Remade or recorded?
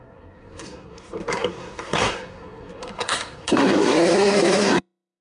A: remade